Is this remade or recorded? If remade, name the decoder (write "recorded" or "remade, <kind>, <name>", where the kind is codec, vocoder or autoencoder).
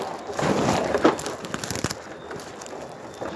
recorded